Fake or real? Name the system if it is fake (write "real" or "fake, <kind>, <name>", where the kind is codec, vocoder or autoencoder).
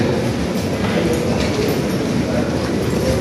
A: real